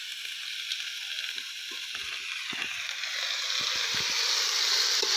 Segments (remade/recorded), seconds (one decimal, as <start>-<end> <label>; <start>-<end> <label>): 0.0-5.2 recorded